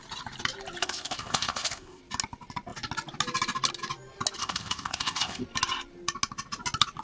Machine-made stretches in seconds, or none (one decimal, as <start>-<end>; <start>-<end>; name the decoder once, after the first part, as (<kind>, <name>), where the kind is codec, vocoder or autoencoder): 0.8-2.0 (codec, ZipCodec); 4.4-5.4